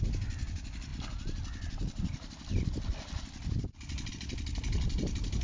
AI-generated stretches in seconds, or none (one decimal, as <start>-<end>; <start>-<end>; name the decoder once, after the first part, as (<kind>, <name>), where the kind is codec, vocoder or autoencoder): none